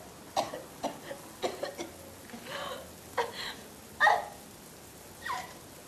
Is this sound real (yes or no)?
yes